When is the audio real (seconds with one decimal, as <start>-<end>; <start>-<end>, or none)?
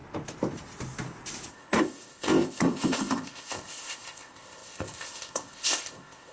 0.0-1.5